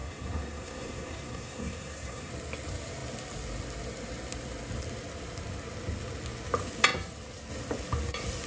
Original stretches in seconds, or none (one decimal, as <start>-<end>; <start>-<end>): 2.3-8.5